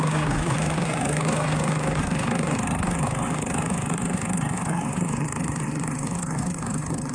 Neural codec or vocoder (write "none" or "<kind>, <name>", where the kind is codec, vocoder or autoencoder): codec, SNAC